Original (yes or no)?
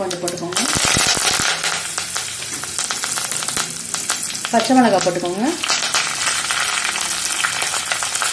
yes